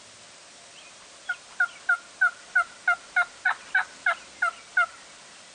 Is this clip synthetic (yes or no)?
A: no